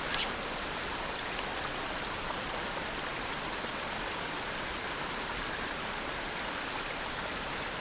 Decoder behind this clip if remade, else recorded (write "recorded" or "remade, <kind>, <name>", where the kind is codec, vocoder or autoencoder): remade, vocoder, BigVGAN v2